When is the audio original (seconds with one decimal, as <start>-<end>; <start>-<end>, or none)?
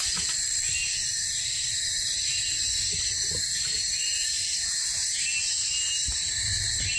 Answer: 0.0-4.1; 6.2-7.0